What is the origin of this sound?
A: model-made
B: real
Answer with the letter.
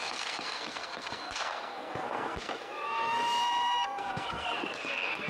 A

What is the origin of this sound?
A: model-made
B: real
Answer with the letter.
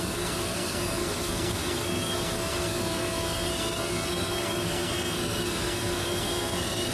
A